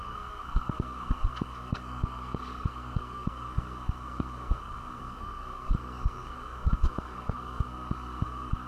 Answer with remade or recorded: remade